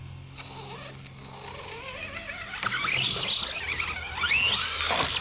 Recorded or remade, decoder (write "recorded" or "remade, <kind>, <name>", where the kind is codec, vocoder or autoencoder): recorded